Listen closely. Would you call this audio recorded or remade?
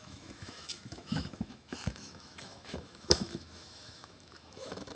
remade